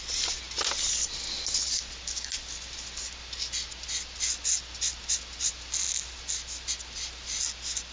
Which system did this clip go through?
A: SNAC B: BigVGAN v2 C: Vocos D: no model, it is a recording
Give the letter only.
D